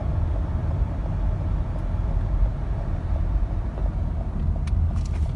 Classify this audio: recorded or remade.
recorded